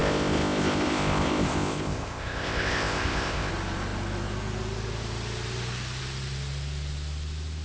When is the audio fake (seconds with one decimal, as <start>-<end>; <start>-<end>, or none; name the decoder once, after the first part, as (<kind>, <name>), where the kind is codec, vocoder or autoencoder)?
0.0-3.5 (codec, ZipCodec)